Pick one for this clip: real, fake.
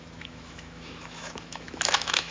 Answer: fake